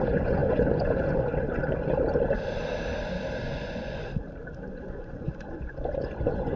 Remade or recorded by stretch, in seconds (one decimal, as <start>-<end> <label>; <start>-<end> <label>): 0.0-1.6 remade; 1.6-3.4 recorded; 3.4-4.0 remade; 4.0-4.7 recorded; 4.7-6.6 remade